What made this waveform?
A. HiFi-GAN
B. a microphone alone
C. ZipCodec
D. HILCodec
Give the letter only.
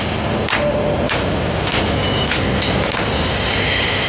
B